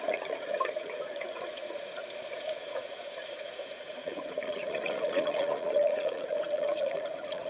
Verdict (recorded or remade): remade